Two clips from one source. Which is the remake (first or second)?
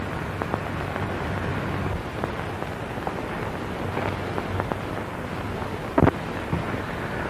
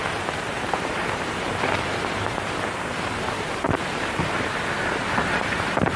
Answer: second